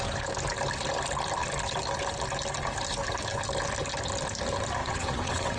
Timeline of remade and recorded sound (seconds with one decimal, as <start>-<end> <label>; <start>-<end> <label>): 0.0-4.8 recorded; 4.8-5.6 remade